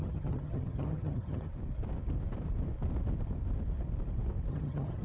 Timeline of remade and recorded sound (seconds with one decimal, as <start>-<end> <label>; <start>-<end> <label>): 0.0-1.5 remade; 1.5-4.5 recorded; 4.5-5.0 remade